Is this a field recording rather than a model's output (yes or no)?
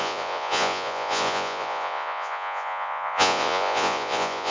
no